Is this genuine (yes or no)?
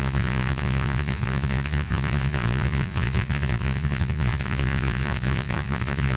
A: no